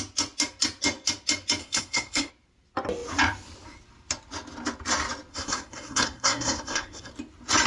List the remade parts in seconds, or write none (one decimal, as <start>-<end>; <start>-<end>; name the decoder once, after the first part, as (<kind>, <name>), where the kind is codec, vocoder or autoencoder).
1.6-2.3 (codec, SNAC); 5.3-7.1